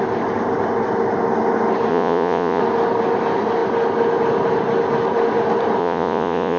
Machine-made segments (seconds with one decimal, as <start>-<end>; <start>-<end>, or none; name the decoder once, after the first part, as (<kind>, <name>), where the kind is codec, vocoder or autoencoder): 1.9-2.6 (vocoder, Vocos); 5.8-6.6